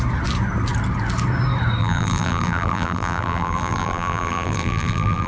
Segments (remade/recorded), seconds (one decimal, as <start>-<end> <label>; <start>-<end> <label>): 0.0-1.8 recorded; 1.8-5.3 remade